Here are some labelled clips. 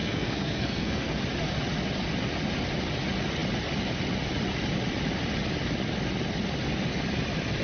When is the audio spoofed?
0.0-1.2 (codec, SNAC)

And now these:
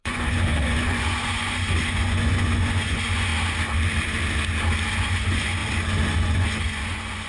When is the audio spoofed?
0.0-3.3 (vocoder, Vocos); 4.9-5.6; 6.2-7.3

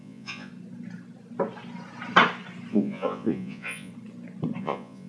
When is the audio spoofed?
0.0-0.5 (vocoder, Vocos); 2.7-3.9; 4.6-5.1

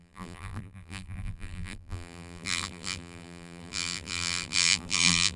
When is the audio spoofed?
0.0-5.4 (vocoder, BigVGAN v2)